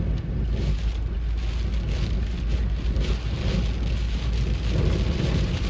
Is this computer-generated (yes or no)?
no